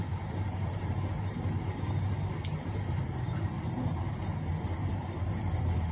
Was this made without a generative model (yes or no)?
yes